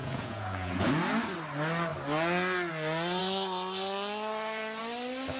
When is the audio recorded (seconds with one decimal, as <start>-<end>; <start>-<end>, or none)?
0.9-5.4